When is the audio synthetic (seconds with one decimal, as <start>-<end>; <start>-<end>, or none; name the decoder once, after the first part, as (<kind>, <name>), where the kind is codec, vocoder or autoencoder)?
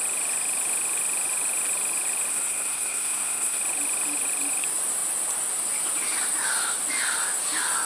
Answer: 2.3-3.6 (codec, SNAC)